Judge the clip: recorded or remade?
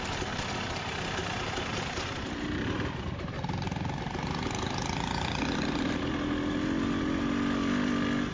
recorded